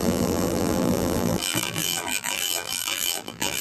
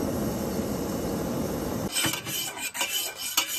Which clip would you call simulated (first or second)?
first